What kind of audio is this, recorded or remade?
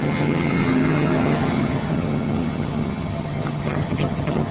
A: remade